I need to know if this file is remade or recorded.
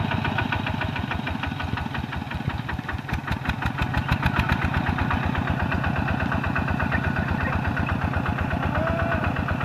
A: recorded